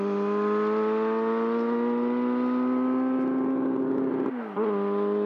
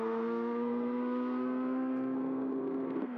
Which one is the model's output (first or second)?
second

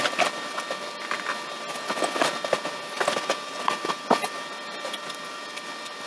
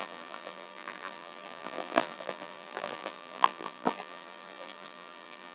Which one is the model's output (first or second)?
second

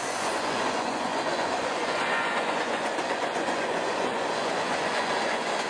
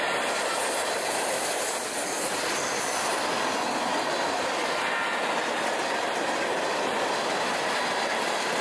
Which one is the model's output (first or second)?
first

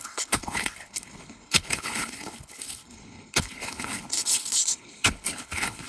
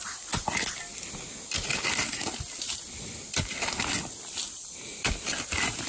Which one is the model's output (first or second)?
first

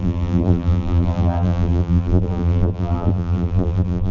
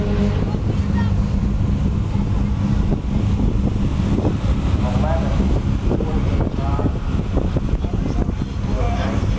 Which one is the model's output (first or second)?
first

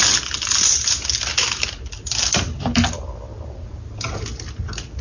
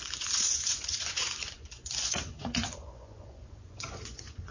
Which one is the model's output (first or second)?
second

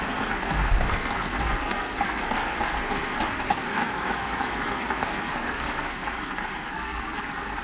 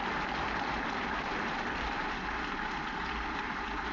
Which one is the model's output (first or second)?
first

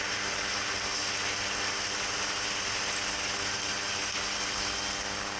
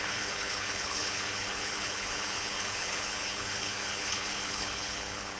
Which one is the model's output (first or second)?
second